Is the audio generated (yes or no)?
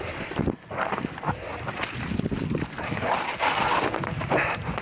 no